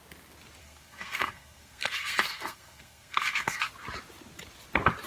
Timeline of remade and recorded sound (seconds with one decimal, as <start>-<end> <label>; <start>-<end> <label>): 0.0-0.6 recorded; 0.6-3.7 remade; 3.7-5.1 recorded